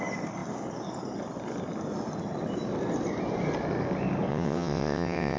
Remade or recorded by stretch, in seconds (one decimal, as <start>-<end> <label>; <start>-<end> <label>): 0.0-4.3 recorded; 4.3-5.4 remade